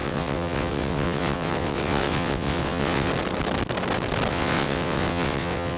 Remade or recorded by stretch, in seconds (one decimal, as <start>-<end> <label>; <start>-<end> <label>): 0.0-3.1 remade; 3.1-4.3 recorded; 4.3-5.8 remade